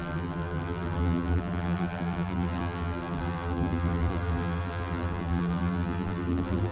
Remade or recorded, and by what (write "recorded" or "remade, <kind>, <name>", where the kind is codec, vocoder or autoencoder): remade, vocoder, BigVGAN v2